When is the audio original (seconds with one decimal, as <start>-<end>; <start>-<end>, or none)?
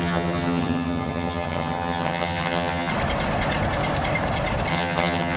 2.9-4.7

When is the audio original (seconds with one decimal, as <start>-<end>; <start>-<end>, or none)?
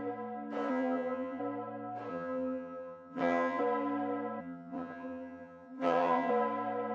0.0-0.7; 1.4-2.1; 3.6-4.4; 6.3-6.9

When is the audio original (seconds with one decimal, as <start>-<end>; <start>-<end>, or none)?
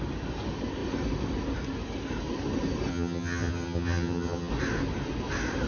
0.0-2.9; 4.5-5.7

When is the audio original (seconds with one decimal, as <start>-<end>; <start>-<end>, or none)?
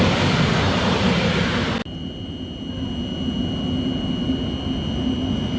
0.0-5.6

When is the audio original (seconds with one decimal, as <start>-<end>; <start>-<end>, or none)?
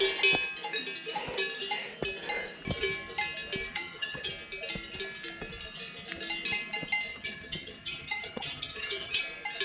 0.0-3.7; 4.3-7.1; 9.2-9.6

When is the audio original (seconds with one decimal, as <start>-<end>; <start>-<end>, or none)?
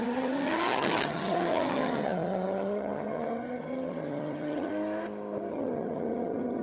4.7-5.5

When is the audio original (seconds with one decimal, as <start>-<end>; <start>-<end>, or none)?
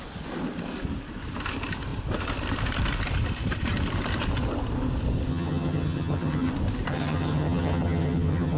0.0-5.3; 6.5-6.9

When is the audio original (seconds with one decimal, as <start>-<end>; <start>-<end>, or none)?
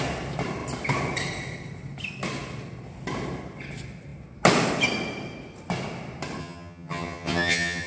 0.0-6.4